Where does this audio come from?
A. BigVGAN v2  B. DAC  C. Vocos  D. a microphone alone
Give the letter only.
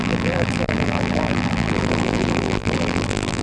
A